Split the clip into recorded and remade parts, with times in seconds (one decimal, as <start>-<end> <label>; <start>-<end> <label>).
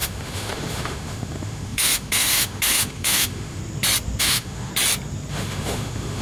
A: 0.0-3.6 remade; 3.6-4.2 recorded; 4.2-4.7 remade; 4.7-5.3 recorded; 5.3-6.2 remade